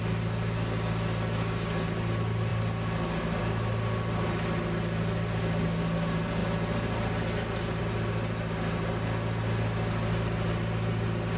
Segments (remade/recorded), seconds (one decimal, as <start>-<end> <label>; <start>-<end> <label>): 0.0-11.4 recorded